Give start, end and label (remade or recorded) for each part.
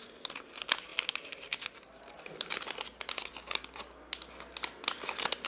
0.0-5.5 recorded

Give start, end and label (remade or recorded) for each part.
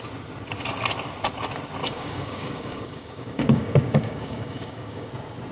0.0-1.8 recorded; 1.8-5.1 remade; 5.1-5.5 recorded